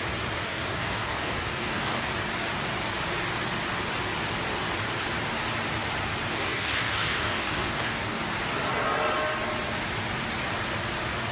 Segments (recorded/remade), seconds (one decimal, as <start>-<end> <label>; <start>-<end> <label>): 0.0-0.4 recorded; 0.4-2.1 remade; 2.1-6.3 recorded; 6.3-8.2 remade; 8.2-11.3 recorded

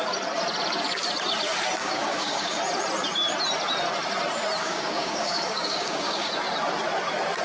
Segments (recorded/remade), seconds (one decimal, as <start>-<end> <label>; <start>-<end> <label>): 0.0-1.8 recorded; 1.8-2.6 remade; 2.6-4.6 recorded; 4.6-6.3 remade; 6.3-7.4 recorded